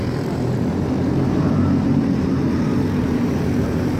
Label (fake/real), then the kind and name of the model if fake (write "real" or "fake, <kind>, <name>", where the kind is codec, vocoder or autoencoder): fake, vocoder, BigVGAN v2